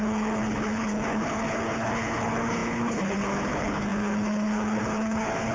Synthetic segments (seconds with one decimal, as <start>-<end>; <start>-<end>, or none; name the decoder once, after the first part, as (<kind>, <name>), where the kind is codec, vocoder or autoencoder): 0.0-5.5 (codec, HILCodec)